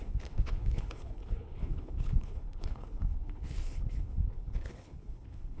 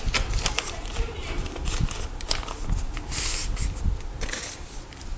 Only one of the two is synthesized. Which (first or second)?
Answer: first